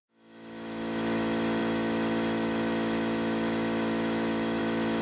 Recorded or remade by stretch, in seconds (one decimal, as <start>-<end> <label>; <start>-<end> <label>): 0.0-5.0 remade